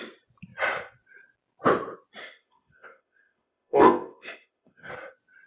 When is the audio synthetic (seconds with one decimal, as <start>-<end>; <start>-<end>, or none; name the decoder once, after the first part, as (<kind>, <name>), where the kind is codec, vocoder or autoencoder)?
2.2-4.9 (codec, ZipCodec)